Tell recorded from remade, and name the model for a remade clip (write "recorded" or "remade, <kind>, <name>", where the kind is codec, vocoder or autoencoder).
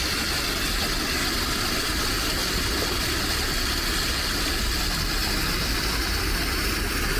recorded